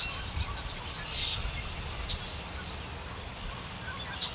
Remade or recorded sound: recorded